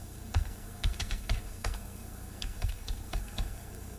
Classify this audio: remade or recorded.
remade